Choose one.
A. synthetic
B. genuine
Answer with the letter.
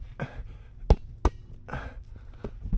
B